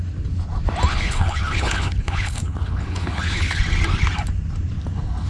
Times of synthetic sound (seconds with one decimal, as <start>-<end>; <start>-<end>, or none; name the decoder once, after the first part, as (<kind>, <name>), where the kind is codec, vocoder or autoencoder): 0.9-3.6 (codec, HILCodec)